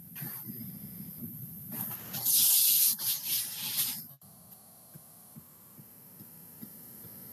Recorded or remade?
remade